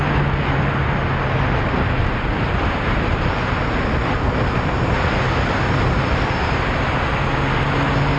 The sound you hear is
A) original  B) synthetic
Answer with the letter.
A